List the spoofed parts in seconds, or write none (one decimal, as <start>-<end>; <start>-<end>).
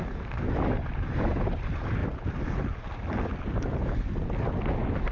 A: none